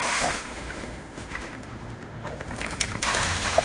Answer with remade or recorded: remade